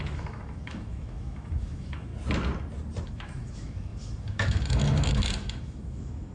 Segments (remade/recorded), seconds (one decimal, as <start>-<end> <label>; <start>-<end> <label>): 0.0-2.1 remade; 2.1-3.0 recorded; 3.0-6.3 remade